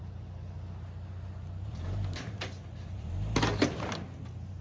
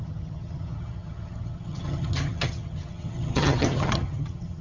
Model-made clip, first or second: second